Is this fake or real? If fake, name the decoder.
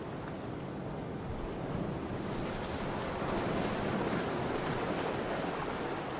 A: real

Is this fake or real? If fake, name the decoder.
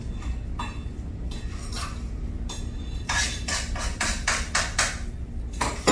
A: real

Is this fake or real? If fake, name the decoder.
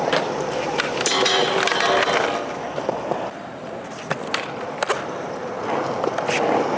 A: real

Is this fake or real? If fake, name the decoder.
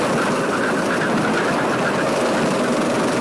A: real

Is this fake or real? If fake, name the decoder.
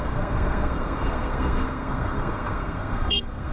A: fake, codec, SNAC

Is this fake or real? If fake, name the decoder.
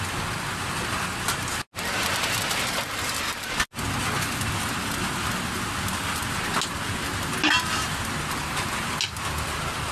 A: real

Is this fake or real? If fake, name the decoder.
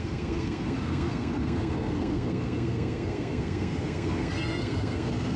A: fake, codec, SNAC